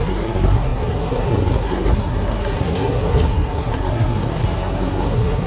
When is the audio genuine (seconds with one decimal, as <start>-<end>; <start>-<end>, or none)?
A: none